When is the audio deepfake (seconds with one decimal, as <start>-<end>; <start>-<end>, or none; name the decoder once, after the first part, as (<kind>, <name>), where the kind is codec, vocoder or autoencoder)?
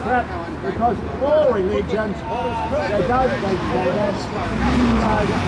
none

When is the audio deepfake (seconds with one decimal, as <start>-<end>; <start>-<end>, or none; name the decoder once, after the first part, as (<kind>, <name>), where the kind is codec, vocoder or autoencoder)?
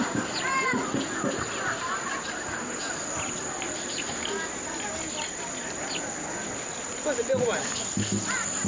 none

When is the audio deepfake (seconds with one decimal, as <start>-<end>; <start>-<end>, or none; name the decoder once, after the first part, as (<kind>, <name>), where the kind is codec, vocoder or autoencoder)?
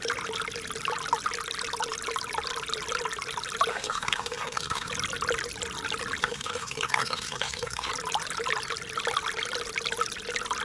3.7-4.9 (codec, SNAC); 6.2-7.9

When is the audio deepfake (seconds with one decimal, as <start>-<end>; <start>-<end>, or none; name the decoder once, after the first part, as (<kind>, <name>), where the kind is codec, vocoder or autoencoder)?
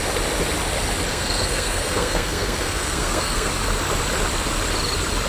1.1-3.5 (codec, SNAC)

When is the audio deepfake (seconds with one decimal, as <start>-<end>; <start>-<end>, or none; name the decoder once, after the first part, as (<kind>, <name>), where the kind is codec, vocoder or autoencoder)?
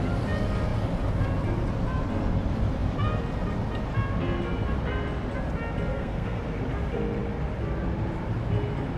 5.9-6.4 (codec, SNAC)